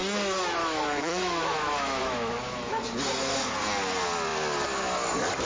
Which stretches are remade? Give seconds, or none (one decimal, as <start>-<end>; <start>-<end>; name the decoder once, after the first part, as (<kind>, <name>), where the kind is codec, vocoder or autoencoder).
0.6-2.8 (autoencoder, DAC-VAE)

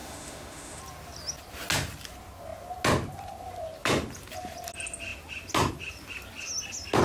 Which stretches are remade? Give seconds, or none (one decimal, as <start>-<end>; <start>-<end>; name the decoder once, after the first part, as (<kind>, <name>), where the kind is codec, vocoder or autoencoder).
0.0-0.8 (autoencoder, DAC-VAE)

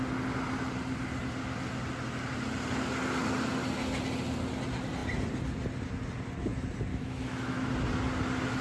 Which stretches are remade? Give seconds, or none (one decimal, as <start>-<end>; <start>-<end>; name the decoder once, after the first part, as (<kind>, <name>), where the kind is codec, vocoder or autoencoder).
6.9-7.7 (autoencoder, DAC-VAE)